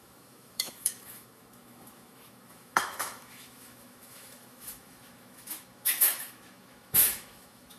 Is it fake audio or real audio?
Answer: fake